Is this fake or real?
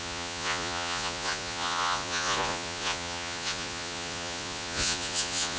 fake